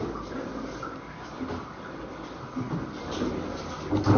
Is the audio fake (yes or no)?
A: no